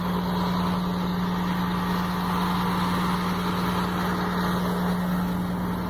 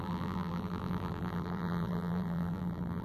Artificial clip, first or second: second